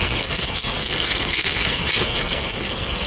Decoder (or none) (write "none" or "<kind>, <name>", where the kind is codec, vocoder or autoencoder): codec, SNAC